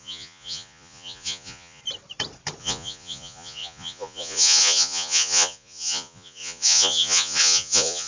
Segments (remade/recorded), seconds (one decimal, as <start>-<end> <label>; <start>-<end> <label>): 0.0-1.8 remade; 1.8-2.6 recorded; 2.6-8.1 remade